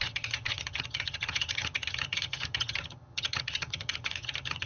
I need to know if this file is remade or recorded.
remade